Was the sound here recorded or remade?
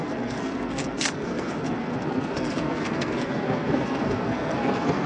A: remade